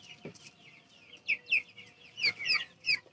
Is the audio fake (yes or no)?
no